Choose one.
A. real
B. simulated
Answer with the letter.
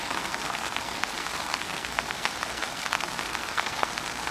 B